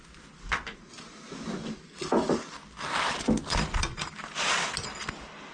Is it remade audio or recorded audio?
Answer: recorded